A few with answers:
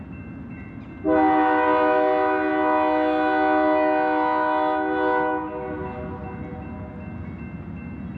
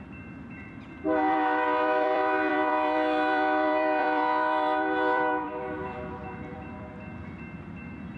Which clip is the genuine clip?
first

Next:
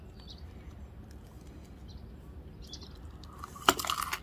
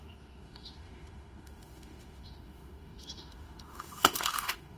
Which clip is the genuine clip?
first